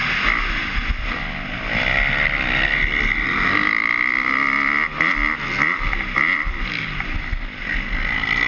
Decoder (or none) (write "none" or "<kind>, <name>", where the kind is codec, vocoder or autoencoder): none